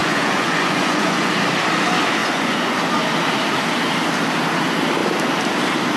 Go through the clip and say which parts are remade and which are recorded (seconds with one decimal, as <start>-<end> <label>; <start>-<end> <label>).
0.0-1.3 remade; 1.3-2.2 recorded; 2.2-2.8 remade; 2.8-6.0 recorded